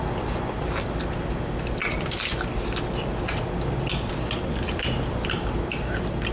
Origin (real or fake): real